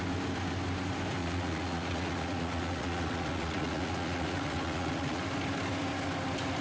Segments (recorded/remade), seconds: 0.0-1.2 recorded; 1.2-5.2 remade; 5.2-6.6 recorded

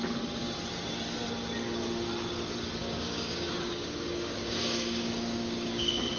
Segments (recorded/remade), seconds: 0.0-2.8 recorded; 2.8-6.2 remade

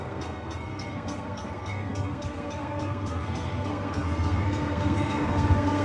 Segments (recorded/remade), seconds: 0.0-5.8 remade